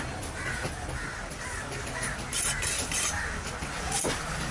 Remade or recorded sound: recorded